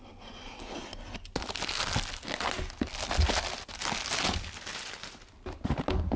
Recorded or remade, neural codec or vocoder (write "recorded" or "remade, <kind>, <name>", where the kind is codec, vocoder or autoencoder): recorded